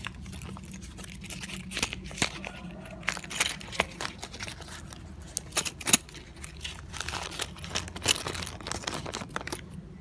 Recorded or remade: recorded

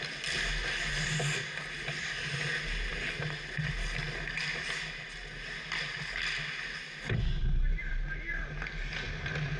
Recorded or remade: recorded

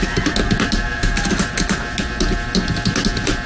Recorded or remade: recorded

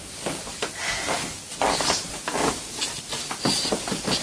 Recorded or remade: recorded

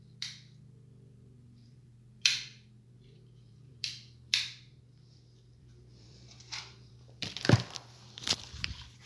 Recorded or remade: remade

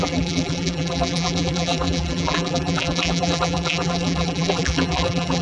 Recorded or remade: remade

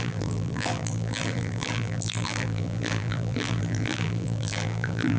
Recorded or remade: remade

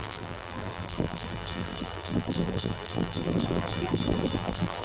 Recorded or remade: remade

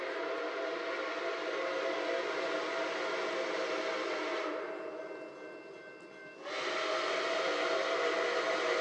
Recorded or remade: recorded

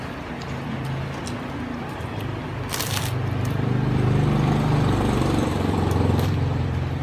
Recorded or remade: remade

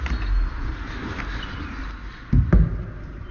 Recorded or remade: recorded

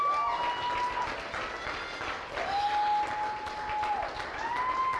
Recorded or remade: recorded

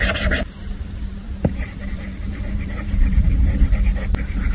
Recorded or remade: remade